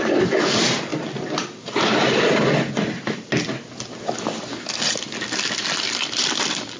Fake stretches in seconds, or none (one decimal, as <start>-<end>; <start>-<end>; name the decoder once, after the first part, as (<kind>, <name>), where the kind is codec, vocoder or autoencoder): none